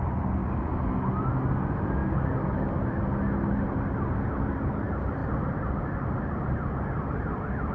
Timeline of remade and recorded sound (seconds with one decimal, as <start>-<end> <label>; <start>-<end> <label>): 0.0-0.4 recorded; 0.4-1.3 remade; 1.3-5.2 recorded; 5.2-7.7 remade